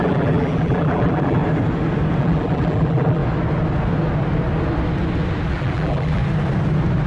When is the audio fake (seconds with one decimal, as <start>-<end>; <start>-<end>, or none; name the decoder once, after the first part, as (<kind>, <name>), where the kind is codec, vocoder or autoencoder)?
0.0-1.4 (vocoder, BigVGAN v2); 2.2-3.2; 5.5-6.2